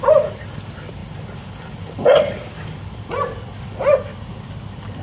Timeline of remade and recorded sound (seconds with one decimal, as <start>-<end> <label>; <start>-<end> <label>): 0.0-5.0 recorded